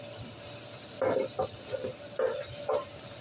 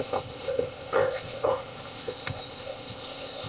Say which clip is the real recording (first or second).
first